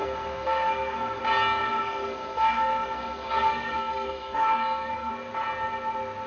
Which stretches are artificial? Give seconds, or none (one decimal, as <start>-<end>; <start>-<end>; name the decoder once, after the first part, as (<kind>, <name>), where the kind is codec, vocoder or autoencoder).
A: 0.0-1.2 (codec, SNAC); 1.6-5.1